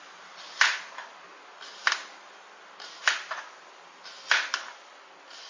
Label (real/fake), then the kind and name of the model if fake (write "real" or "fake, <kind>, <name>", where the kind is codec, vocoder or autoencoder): real